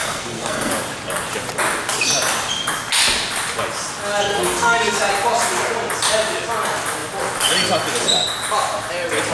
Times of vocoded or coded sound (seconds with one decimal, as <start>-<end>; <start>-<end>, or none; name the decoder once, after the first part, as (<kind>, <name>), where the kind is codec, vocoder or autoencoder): 0.0-0.7 (codec, SNAC); 4.3-5.0